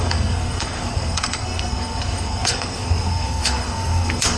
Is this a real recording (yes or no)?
no